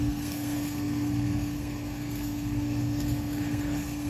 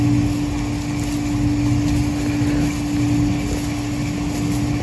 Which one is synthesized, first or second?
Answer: first